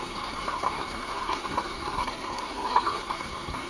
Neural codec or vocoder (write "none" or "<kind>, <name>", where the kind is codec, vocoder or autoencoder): codec, SNAC